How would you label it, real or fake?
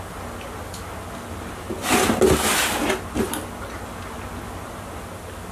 real